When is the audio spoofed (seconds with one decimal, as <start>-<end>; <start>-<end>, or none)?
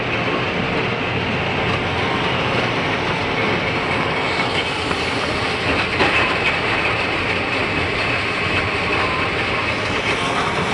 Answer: 6.0-8.6